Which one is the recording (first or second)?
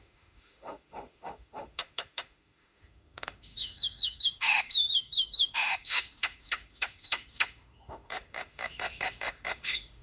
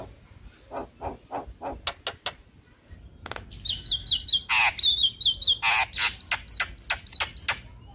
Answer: second